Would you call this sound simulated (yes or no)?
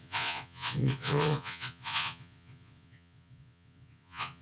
yes